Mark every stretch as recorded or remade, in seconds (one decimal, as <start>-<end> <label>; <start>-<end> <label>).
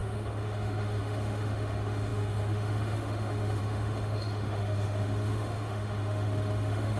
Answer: 0.0-7.0 remade